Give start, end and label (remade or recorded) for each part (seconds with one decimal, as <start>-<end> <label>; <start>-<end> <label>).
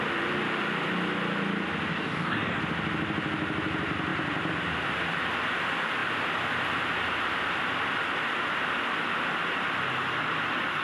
0.0-1.9 recorded; 1.9-2.6 remade; 2.6-10.8 recorded